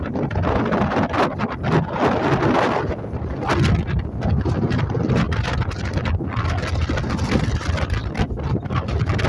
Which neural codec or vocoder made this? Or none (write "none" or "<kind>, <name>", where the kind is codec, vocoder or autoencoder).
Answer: none